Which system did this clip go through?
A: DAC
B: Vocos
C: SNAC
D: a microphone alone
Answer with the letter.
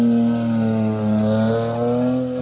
D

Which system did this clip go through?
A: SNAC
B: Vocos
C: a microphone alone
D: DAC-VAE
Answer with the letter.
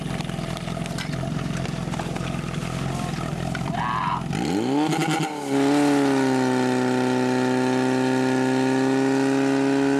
C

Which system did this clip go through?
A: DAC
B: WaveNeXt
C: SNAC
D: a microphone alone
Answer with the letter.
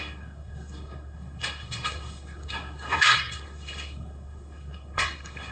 C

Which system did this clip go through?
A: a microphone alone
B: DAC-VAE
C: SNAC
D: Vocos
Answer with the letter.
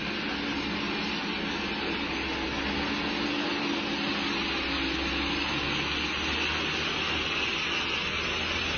A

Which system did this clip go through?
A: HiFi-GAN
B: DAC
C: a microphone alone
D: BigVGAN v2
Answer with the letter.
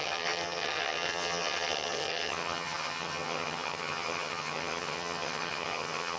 A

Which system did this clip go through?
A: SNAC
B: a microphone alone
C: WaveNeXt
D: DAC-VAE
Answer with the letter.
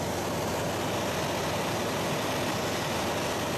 B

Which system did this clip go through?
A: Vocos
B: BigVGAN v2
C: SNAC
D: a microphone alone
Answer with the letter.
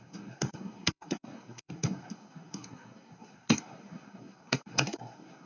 C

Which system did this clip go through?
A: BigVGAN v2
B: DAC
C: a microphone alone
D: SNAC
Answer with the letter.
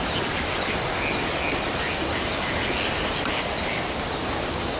C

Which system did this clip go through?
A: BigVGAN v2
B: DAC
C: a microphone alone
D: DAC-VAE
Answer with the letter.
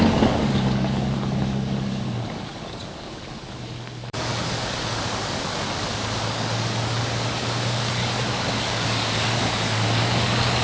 B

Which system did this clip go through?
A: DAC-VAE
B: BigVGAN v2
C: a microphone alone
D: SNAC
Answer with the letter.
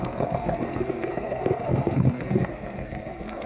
D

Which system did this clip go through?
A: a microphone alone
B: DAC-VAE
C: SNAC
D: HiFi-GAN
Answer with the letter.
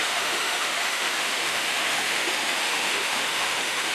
B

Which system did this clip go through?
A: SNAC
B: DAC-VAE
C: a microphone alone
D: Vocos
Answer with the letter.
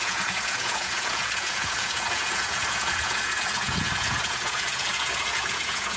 D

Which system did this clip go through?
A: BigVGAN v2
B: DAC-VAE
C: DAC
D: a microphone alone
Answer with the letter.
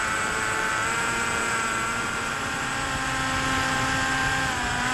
A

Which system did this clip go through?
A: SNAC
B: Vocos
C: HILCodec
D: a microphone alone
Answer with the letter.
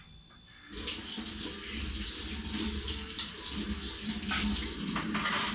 D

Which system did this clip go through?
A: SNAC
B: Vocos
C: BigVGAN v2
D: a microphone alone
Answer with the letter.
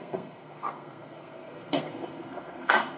A